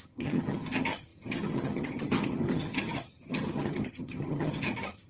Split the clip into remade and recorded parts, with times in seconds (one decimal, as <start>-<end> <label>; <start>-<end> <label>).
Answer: 0.0-5.1 remade